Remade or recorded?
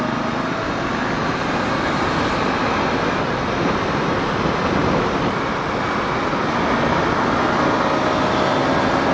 recorded